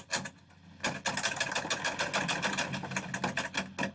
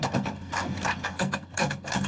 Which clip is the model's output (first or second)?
second